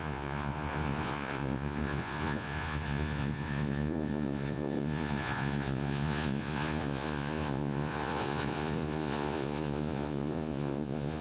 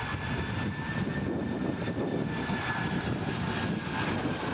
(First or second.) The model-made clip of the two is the first